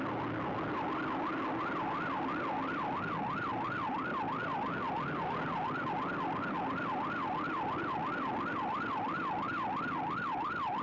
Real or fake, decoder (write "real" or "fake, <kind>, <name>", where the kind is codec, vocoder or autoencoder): real